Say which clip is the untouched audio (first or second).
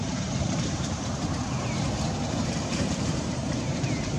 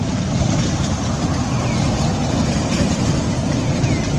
second